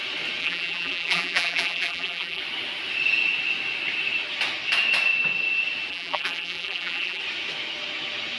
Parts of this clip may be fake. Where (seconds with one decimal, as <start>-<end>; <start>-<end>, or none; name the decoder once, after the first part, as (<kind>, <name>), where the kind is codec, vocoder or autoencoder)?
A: 0.4-2.4 (vocoder, BigVGAN v2); 5.9-7.2